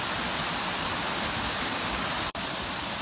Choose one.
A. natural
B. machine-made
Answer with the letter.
B